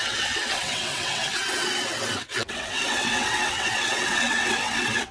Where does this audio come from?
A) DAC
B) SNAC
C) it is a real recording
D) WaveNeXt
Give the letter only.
D